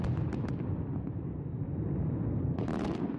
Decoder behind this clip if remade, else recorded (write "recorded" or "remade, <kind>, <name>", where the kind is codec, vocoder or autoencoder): recorded